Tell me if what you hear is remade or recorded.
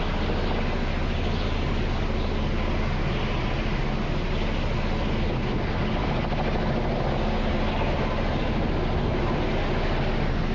recorded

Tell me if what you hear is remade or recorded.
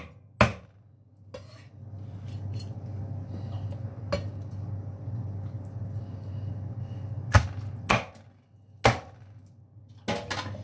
recorded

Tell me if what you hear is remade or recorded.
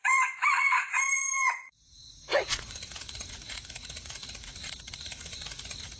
remade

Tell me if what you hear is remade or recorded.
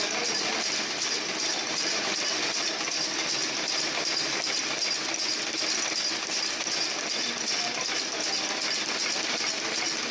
recorded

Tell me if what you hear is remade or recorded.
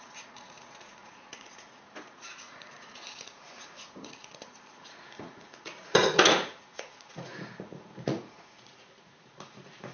remade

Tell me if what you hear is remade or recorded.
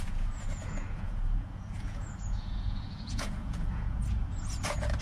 remade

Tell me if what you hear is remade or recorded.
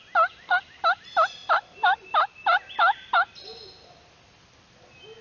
recorded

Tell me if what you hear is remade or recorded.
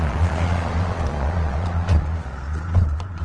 remade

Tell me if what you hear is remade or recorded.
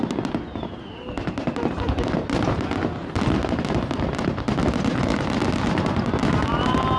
recorded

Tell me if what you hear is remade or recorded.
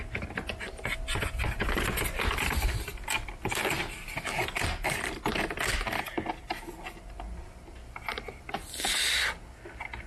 recorded